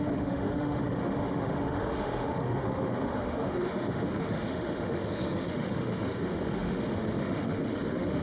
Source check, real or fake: fake